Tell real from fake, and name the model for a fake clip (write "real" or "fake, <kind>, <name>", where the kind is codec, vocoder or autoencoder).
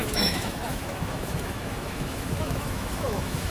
fake, autoencoder, DAC-VAE